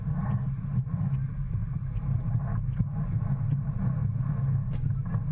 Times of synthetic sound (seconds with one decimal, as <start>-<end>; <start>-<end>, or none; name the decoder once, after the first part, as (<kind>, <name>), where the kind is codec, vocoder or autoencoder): 1.6-2.4 (vocoder, BigVGAN v2)